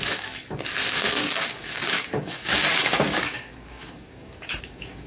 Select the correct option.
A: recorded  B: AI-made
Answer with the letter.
B